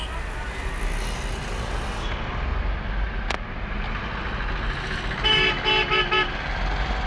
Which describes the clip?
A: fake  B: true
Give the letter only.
B